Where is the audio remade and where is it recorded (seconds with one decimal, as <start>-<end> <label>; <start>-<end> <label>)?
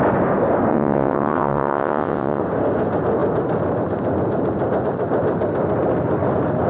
0.0-0.7 recorded; 0.7-2.4 remade; 2.4-6.7 recorded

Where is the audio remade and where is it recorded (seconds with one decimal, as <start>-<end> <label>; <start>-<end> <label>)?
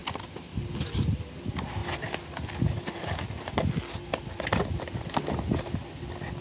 0.0-6.4 recorded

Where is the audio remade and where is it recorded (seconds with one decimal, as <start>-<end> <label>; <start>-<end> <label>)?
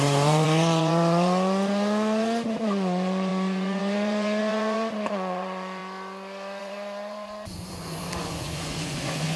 0.0-5.8 remade; 5.8-6.6 recorded; 6.6-9.4 remade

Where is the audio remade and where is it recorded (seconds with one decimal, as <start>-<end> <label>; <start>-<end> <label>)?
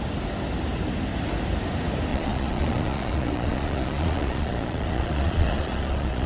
0.0-2.1 recorded; 2.1-6.3 remade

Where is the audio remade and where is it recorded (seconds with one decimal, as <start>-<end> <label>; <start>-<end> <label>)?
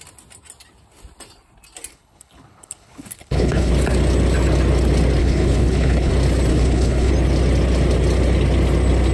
0.0-1.9 recorded; 1.9-3.7 remade; 3.7-5.2 recorded; 5.2-6.1 remade; 6.1-6.5 recorded; 6.5-7.1 remade; 7.1-9.1 recorded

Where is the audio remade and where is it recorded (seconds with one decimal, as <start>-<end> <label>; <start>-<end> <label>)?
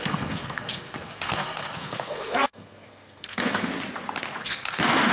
0.0-3.7 remade; 3.7-4.4 recorded; 4.4-5.1 remade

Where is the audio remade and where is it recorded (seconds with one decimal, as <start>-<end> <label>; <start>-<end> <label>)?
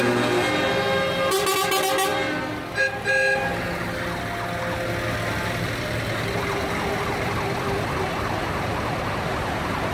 0.0-9.9 recorded